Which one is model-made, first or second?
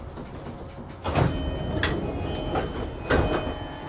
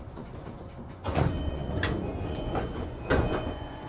second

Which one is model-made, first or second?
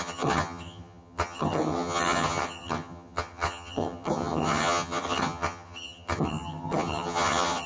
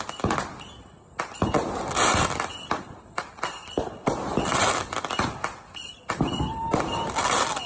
first